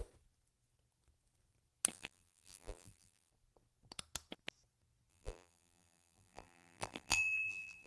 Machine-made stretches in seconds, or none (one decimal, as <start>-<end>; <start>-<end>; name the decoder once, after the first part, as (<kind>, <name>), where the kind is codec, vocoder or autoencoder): 1.9-3.3 (vocoder, BigVGAN v2); 5.1-7.9